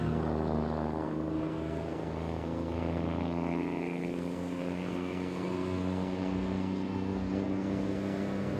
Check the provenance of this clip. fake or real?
fake